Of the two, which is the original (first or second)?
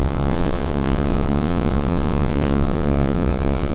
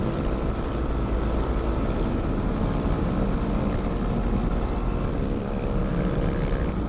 second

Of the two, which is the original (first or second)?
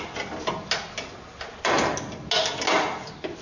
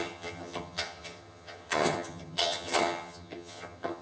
first